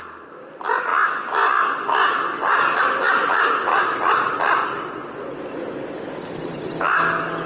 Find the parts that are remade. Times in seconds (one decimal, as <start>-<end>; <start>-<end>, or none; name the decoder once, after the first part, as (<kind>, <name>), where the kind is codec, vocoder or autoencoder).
none